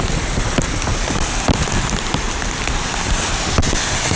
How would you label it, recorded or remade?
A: recorded